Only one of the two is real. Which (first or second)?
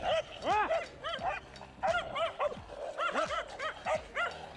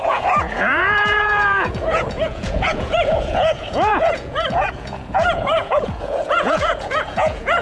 first